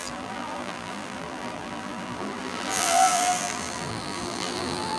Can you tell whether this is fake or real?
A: fake